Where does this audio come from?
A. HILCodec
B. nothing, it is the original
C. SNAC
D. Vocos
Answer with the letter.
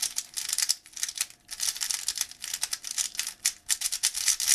B